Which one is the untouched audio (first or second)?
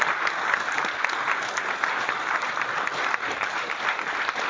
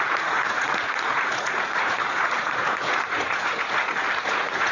first